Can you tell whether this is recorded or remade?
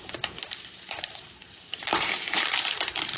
remade